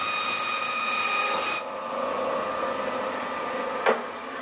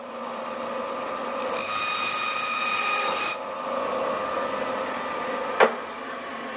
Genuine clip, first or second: first